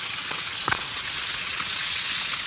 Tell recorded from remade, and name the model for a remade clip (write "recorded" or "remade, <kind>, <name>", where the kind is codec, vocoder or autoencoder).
remade, vocoder, WaveNeXt